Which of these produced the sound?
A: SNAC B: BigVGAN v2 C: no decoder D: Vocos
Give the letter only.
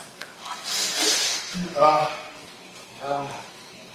A